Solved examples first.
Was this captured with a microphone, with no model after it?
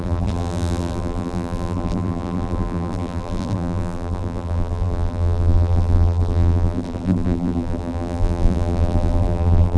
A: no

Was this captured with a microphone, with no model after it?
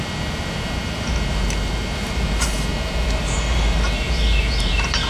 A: no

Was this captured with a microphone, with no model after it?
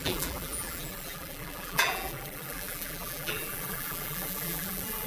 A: no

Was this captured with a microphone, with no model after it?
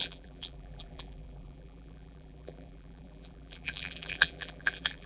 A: no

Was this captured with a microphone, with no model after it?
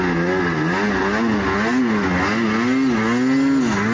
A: yes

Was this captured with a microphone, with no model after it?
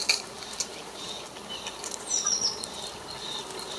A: yes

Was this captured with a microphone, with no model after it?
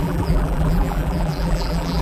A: no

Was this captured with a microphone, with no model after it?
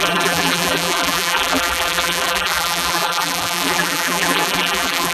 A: no